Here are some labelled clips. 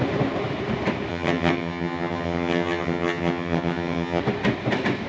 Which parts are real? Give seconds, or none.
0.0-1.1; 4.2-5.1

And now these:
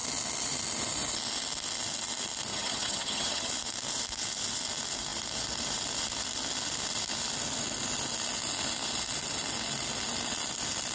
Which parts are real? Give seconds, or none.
0.0-2.5; 3.5-10.9